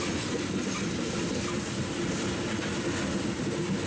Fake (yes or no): no